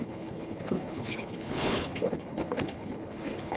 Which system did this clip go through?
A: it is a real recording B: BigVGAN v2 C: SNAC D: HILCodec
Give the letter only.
D